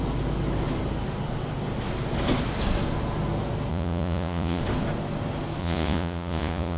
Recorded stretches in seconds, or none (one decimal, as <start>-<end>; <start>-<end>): 0.0-3.7; 4.6-5.6